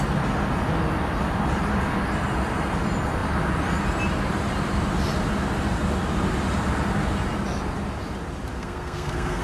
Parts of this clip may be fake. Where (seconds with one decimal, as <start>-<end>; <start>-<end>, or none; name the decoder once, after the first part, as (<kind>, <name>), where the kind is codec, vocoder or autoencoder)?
8.5-9.4 (codec, SNAC)